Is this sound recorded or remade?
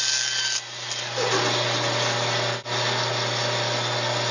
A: recorded